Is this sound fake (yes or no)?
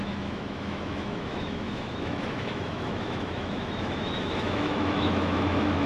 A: yes